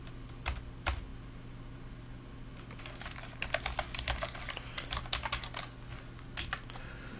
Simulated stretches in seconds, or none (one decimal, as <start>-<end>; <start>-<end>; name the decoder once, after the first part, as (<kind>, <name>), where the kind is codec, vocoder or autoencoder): none